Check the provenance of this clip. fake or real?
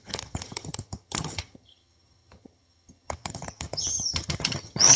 fake